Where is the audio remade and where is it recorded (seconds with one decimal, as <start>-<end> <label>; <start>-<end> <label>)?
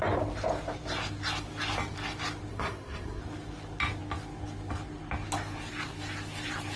0.0-2.5 recorded; 2.5-3.2 remade; 3.2-6.8 recorded